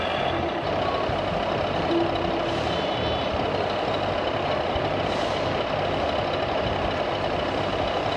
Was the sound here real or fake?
real